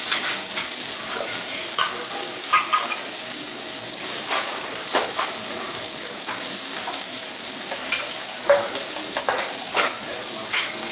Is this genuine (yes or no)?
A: no